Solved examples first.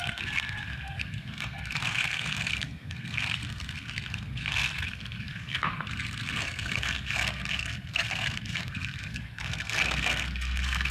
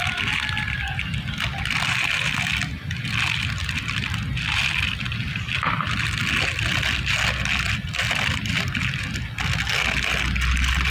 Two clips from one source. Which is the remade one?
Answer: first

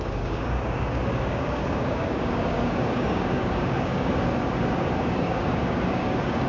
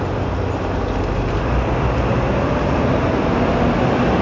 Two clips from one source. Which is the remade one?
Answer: first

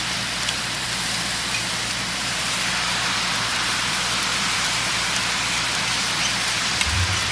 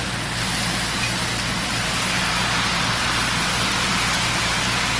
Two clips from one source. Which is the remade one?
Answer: first